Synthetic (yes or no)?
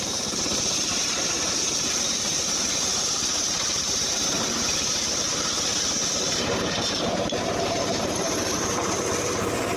yes